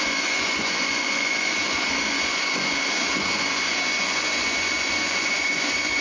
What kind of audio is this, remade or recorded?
remade